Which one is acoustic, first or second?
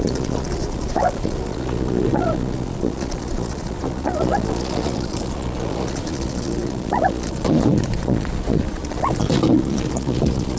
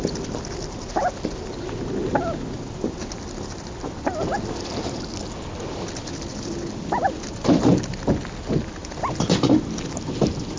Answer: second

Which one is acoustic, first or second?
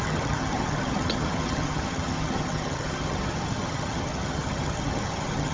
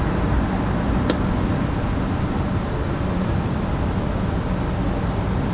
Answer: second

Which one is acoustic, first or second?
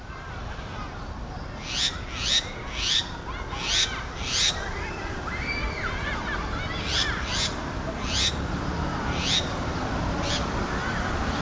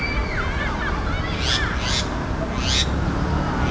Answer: second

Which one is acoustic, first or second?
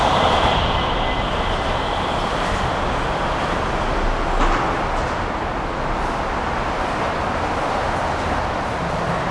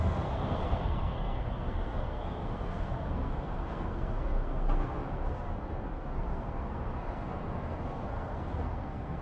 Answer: first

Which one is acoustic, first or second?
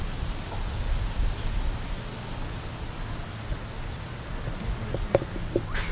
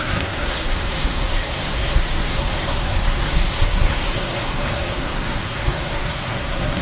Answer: first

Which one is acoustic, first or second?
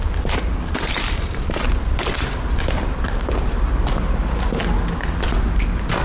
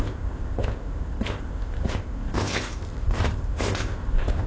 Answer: first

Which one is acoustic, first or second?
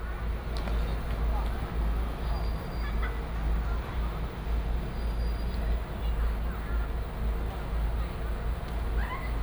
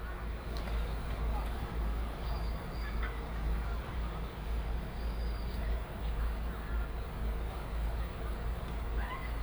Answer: first